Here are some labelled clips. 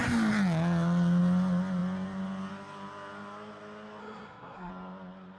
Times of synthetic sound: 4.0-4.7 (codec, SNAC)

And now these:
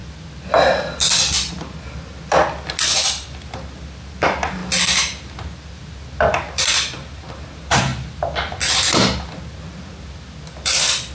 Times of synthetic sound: none

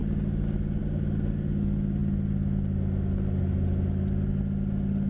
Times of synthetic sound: none